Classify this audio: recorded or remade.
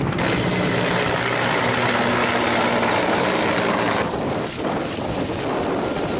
recorded